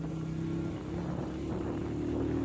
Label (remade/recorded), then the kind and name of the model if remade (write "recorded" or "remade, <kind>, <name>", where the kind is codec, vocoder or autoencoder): recorded